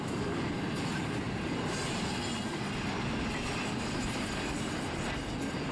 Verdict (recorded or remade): recorded